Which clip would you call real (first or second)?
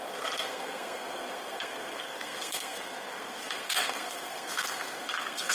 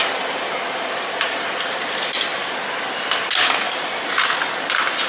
second